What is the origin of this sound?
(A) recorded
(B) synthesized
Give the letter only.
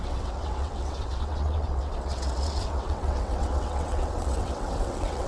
B